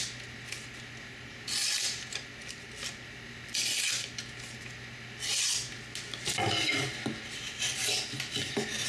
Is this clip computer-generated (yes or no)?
no